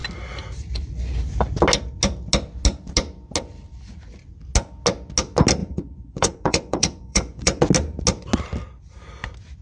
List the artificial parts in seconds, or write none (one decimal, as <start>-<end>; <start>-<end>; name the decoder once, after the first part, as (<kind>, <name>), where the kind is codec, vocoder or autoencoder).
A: 5.6-7.6 (vocoder, Vocos)

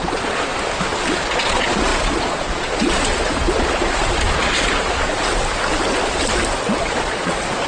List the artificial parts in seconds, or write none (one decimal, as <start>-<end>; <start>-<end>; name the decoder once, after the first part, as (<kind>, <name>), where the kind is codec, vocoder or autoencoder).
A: 0.0-0.5 (vocoder, Vocos); 1.1-5.3; 6.8-7.7

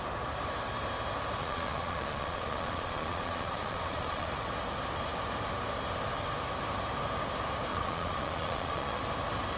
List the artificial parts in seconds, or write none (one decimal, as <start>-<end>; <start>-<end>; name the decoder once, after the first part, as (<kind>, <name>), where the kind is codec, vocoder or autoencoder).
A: 1.4-4.3 (vocoder, Vocos); 7.7-9.0

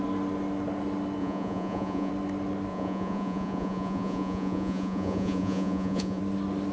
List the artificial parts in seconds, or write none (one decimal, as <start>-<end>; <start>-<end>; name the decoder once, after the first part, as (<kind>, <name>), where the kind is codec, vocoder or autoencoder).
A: 1.2-2.1 (vocoder, Vocos); 2.7-6.2

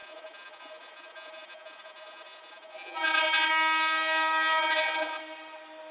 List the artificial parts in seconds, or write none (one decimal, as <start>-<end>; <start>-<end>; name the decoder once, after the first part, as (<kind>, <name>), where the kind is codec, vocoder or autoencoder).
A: 0.0-3.5 (vocoder, Vocos); 4.6-5.2

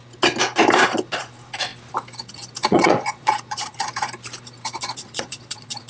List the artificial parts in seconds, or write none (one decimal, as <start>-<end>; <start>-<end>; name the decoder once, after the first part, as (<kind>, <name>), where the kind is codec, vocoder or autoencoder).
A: 2.7-3.9 (vocoder, Vocos); 5.1-5.9